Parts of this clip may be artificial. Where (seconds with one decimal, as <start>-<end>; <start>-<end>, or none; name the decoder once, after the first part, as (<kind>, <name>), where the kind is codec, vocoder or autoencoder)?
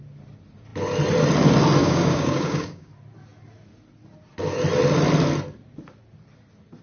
1.8-2.9 (codec, DAC)